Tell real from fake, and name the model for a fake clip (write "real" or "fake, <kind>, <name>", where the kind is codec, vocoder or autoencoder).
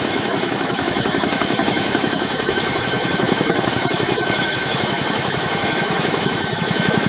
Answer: fake, autoencoder, DAC-VAE